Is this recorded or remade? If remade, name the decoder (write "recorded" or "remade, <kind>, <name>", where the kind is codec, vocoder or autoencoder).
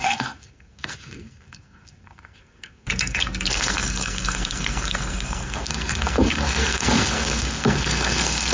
remade, codec, SNAC